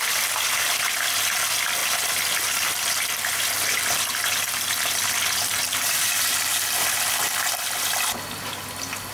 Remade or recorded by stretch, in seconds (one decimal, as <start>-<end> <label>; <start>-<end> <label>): 0.0-5.4 recorded; 5.4-6.6 remade; 6.6-9.1 recorded